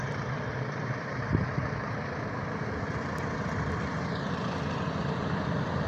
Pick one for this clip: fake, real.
fake